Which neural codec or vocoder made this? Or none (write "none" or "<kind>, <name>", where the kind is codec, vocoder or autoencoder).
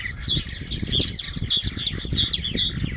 none